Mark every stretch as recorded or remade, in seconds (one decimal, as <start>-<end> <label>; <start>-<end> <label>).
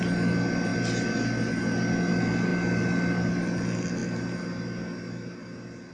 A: 0.0-5.9 recorded